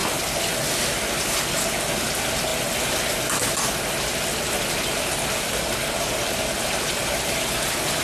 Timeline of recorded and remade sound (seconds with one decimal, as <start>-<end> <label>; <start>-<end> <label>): 0.0-8.0 recorded

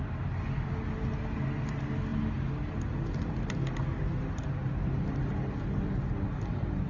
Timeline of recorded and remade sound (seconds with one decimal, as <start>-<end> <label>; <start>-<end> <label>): 0.0-6.9 recorded

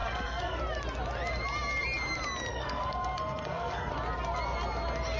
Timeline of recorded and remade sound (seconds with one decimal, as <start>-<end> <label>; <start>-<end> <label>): 0.0-0.6 remade; 0.6-2.5 recorded; 2.5-3.9 remade; 3.9-5.2 recorded

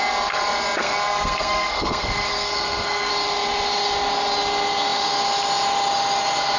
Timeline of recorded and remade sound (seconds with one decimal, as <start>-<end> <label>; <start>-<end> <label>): 0.0-0.8 recorded; 0.8-3.1 remade; 3.1-6.6 recorded

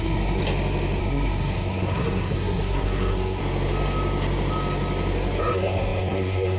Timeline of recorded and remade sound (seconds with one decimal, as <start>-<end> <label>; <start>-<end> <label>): 0.0-0.4 remade; 0.4-1.0 recorded; 1.0-3.4 remade; 3.4-5.4 recorded; 5.4-6.6 remade